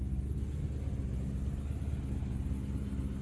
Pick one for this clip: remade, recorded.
recorded